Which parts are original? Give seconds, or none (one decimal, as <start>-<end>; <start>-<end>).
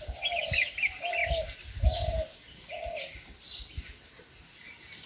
0.0-5.1